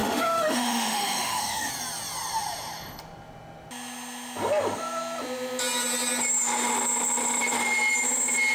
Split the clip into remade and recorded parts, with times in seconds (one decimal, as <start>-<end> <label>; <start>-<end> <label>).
0.0-1.7 remade; 1.7-8.5 recorded